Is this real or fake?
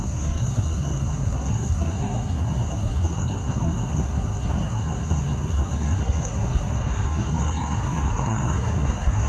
fake